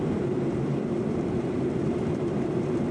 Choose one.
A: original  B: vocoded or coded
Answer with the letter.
B